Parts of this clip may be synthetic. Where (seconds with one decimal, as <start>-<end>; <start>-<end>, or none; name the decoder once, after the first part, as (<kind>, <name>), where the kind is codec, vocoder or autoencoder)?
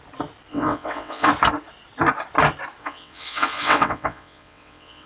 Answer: 0.5-1.3 (vocoder, WaveNeXt); 2.8-5.1